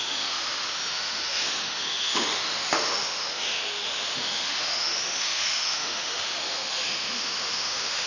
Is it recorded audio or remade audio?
remade